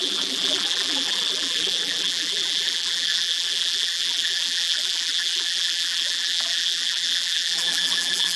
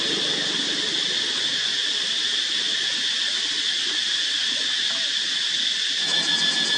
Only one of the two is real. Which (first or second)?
second